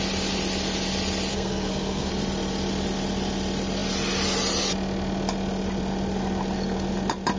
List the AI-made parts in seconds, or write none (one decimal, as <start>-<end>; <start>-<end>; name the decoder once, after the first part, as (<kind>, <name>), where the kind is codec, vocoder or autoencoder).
1.3-2.1 (codec, SNAC)